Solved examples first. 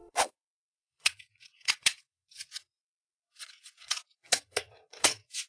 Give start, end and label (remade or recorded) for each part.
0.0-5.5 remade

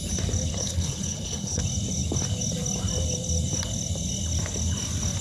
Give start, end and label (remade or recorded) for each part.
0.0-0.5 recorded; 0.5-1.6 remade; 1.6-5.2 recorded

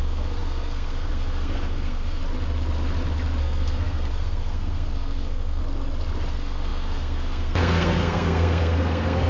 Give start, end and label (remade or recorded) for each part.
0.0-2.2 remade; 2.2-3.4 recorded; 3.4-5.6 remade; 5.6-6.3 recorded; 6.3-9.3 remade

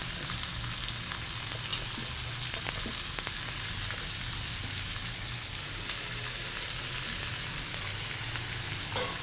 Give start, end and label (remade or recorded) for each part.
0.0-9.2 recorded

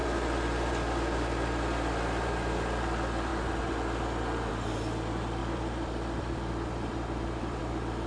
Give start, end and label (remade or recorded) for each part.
0.0-5.4 recorded; 5.4-7.6 remade; 7.6-8.1 recorded

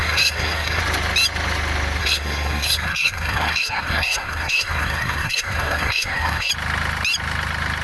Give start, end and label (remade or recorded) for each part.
0.0-0.8 remade; 0.8-2.0 recorded; 2.0-6.5 remade; 6.5-7.8 recorded

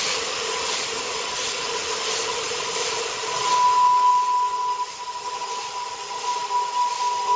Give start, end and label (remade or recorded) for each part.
0.0-7.4 recorded